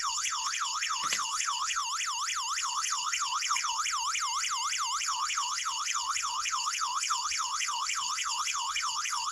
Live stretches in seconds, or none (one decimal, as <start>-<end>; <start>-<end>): 1.8-2.6; 3.8-5.0